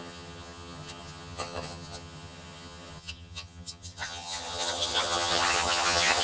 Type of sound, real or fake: fake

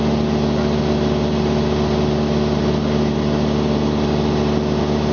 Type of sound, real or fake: real